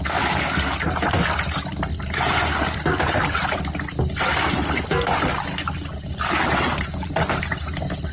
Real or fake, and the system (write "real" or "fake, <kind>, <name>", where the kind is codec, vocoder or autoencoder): real